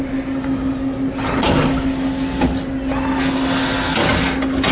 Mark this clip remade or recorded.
recorded